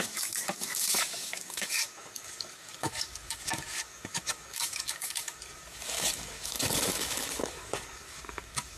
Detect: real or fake fake